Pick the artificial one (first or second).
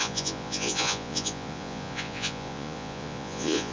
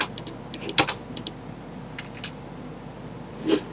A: first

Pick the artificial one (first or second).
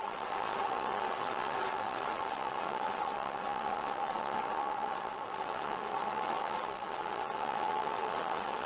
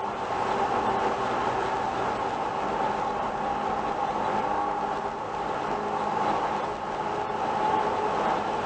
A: first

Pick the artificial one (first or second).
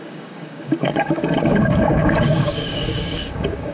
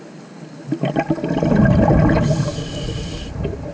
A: first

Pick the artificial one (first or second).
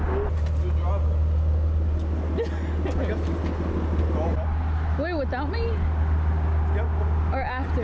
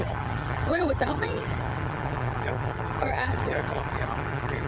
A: second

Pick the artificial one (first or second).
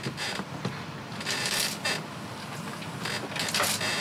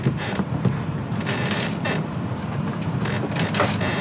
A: second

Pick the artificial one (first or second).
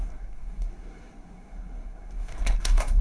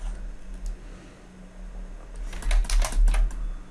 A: first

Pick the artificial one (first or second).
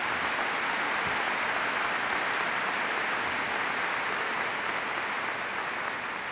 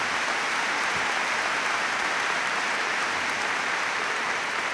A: second